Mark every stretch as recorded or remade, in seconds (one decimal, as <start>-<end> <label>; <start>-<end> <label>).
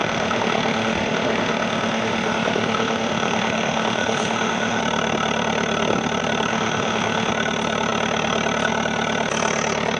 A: 0.0-4.8 remade; 4.8-6.5 recorded; 6.5-7.3 remade; 7.3-10.0 recorded